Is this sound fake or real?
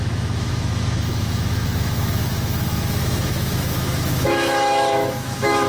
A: fake